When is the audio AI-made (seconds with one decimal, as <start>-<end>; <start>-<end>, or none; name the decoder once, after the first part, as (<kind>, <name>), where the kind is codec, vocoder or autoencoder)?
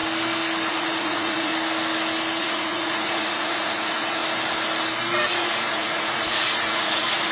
0.7-1.5 (vocoder, Vocos); 2.4-4.2; 5.3-7.3